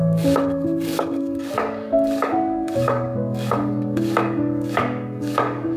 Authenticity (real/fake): fake